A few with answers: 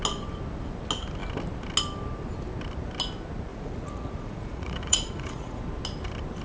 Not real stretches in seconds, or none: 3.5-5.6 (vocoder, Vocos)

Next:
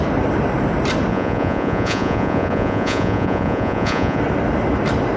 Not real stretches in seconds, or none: 1.1-4.2 (vocoder, Vocos)

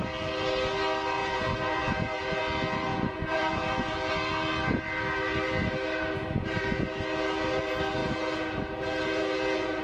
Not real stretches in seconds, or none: 1.2-2.4 (vocoder, Vocos); 2.9-4.1; 8.0-9.8

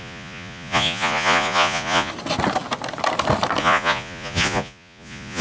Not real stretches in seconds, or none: 0.0-2.1 (vocoder, Vocos); 3.6-5.4

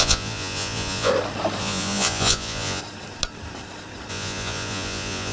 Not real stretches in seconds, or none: 0.0-1.1 (vocoder, Vocos); 1.6-2.8; 4.1-5.3